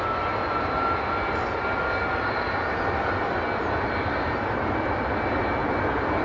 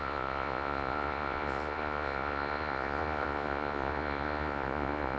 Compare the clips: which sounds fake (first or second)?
second